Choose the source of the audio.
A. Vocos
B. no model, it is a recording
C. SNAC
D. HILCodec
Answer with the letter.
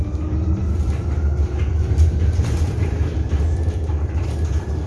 B